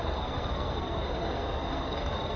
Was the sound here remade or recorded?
remade